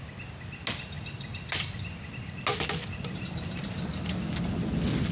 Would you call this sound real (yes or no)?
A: yes